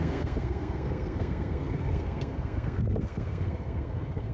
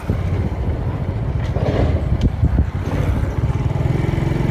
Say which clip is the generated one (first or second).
first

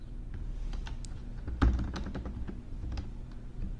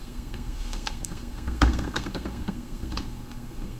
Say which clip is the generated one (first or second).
second